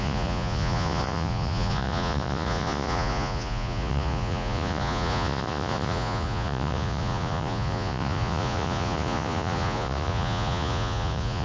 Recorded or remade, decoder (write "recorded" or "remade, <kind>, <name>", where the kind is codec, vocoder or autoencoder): remade, vocoder, Vocos